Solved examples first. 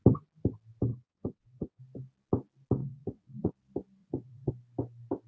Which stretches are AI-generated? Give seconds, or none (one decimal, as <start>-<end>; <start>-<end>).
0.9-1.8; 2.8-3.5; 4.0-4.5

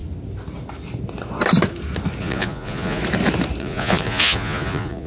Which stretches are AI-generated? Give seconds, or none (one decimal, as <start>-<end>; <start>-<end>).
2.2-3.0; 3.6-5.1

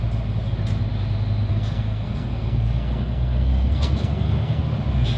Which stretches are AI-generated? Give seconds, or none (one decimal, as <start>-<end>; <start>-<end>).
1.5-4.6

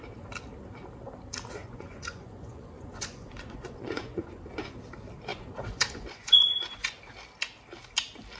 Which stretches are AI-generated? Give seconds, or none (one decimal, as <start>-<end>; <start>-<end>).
1.6-4.7; 5.3-7.0